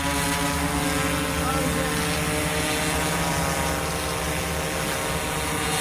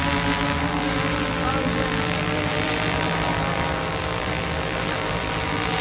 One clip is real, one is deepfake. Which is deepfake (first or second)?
second